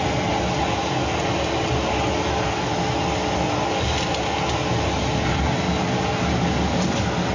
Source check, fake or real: real